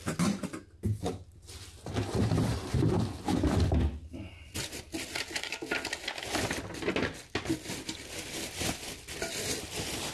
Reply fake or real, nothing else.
real